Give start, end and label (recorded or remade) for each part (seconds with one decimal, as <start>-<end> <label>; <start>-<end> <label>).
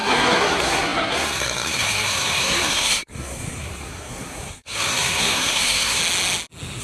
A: 0.0-6.0 remade; 6.0-6.8 recorded